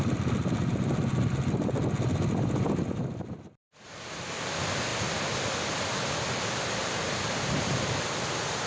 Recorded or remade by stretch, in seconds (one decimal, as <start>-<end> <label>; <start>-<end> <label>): 0.0-6.8 recorded; 6.8-7.7 remade; 7.7-8.7 recorded